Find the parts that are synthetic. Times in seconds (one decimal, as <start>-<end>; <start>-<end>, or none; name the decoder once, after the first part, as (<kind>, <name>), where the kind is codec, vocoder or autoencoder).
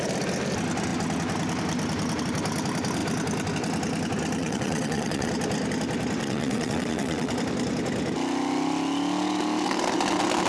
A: 4.4-5.3 (vocoder, WaveNeXt); 6.2-7.3